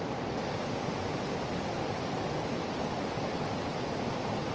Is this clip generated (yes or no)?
no